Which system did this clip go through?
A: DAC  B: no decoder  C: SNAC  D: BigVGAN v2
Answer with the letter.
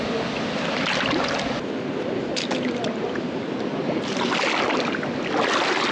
B